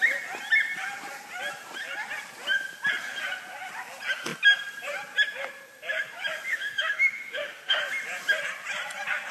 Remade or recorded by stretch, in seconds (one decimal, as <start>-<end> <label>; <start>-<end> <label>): 0.0-6.5 recorded; 6.5-7.8 remade; 7.8-9.3 recorded

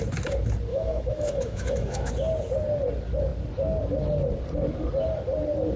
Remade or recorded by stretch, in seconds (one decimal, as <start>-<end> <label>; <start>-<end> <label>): 0.0-0.7 recorded; 0.7-2.1 remade; 2.1-5.8 recorded

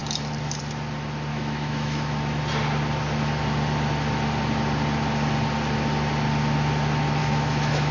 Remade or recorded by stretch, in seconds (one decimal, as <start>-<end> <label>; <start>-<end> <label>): 0.0-1.3 recorded; 1.3-2.4 remade; 2.4-7.2 recorded; 7.2-7.9 remade

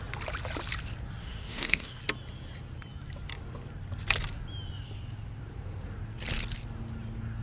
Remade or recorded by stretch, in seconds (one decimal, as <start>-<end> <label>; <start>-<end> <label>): 0.0-1.2 recorded; 1.2-2.0 remade; 2.0-7.4 recorded